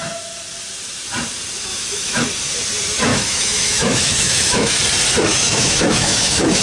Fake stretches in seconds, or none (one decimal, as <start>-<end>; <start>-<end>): 1.7-2.2; 3.1-4.8; 5.3-6.6